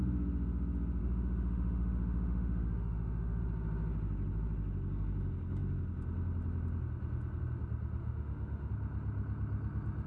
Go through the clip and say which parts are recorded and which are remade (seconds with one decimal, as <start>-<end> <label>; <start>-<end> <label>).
0.0-1.0 recorded; 1.0-3.4 remade; 3.4-8.0 recorded; 8.0-8.7 remade; 8.7-10.1 recorded